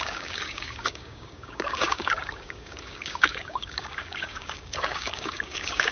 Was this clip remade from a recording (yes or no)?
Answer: yes